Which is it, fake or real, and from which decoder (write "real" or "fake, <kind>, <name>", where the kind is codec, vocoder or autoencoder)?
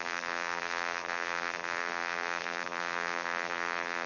fake, vocoder, BigVGAN v2